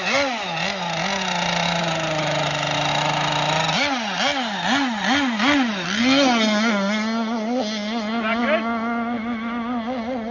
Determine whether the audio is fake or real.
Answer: real